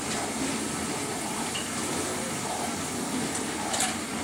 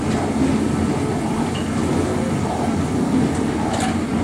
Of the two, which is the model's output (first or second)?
first